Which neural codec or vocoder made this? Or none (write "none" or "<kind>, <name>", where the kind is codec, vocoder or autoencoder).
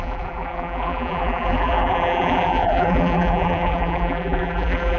vocoder, BigVGAN v2